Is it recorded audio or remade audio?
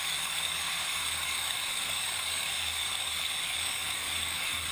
remade